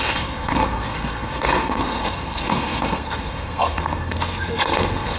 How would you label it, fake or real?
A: fake